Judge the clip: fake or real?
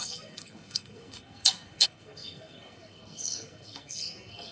fake